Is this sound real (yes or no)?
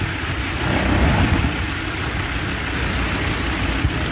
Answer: yes